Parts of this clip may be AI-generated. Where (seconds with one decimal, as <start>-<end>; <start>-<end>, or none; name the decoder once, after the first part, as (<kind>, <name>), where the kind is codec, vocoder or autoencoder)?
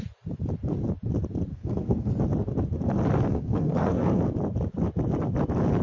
1.5-2.1 (codec, SNAC); 3.3-4.2